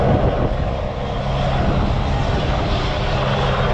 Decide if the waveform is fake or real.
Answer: real